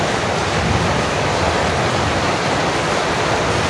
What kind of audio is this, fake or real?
real